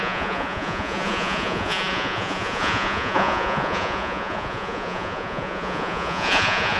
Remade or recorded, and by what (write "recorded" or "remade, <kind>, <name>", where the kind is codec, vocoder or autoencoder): remade, vocoder, Vocos